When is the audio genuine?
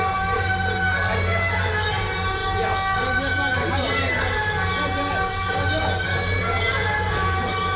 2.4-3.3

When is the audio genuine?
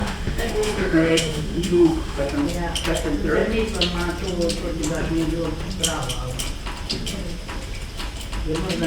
2.3-8.9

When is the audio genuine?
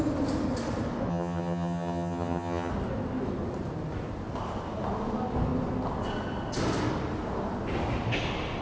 0.0-1.1; 2.7-8.6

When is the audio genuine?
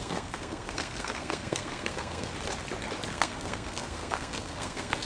2.3-3.1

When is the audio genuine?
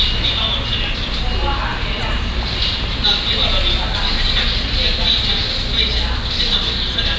0.0-1.7; 3.1-7.2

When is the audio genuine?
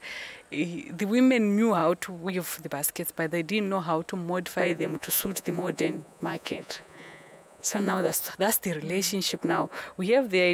0.0-4.6; 8.3-9.3; 9.8-10.5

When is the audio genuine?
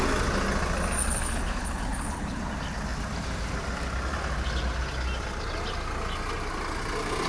0.0-1.0; 2.4-7.3